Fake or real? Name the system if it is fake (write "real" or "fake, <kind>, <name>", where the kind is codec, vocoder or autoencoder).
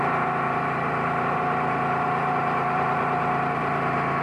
fake, vocoder, BigVGAN v2